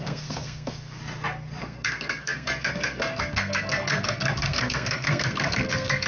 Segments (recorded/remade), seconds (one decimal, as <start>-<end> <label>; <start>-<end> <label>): 0.0-1.0 remade; 1.0-1.6 recorded; 1.6-6.1 remade